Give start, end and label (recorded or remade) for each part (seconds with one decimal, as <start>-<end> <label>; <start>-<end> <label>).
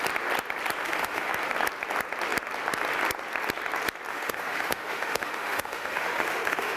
0.0-0.8 recorded; 0.8-1.3 remade; 1.3-4.1 recorded; 4.1-6.8 remade